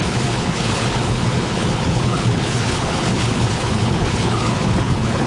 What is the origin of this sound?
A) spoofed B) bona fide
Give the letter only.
A